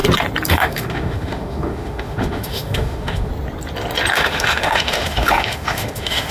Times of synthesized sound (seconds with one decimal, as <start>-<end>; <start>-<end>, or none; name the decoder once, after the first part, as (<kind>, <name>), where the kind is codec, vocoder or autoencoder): 0.5-3.3 (autoencoder, DAC-VAE); 4.1-6.3